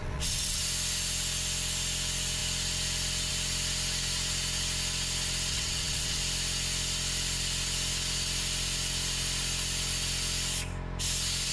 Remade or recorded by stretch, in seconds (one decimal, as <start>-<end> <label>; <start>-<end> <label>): 0.0-0.6 remade; 0.6-5.5 recorded; 5.5-6.2 remade; 6.2-11.5 recorded